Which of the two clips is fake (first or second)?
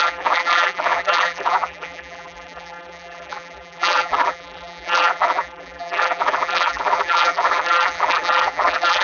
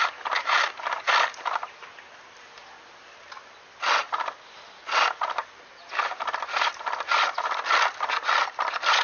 first